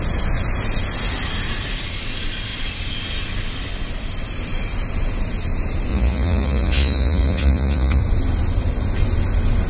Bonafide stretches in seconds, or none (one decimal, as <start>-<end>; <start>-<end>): 0.0-5.9; 8.0-9.7